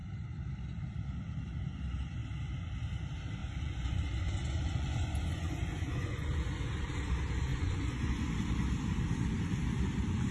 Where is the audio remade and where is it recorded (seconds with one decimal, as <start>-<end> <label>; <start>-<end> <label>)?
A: 0.0-3.4 recorded; 3.4-6.8 remade; 6.8-7.5 recorded; 7.5-8.3 remade; 8.3-10.3 recorded